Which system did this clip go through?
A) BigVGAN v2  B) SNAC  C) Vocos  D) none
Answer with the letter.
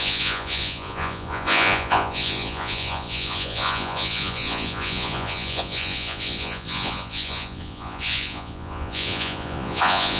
C